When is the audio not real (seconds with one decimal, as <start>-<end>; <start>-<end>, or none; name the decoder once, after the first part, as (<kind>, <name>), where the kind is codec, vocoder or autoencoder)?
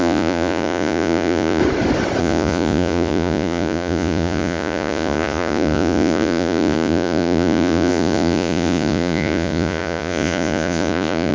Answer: 0.0-1.6 (vocoder, Vocos); 2.2-11.3